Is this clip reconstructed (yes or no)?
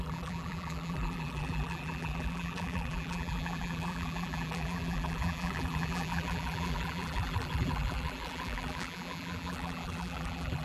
yes